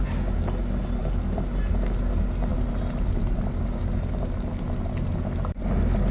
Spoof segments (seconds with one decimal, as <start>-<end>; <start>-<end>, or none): none